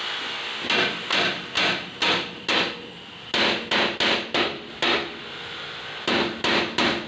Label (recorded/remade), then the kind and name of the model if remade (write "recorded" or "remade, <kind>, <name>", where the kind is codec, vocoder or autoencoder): recorded